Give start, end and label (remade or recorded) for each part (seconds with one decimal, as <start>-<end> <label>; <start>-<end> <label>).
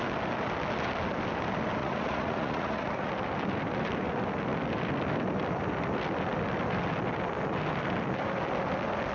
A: 0.0-1.8 recorded; 1.8-3.1 remade; 3.1-9.1 recorded